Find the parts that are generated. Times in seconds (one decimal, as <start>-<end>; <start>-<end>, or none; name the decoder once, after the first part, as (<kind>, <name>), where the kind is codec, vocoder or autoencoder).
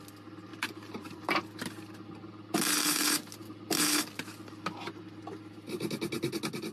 0.5-1.4 (vocoder, BigVGAN v2)